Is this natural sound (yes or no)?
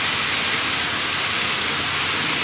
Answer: yes